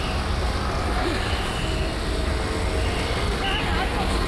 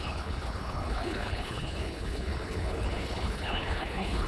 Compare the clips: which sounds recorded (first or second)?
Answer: first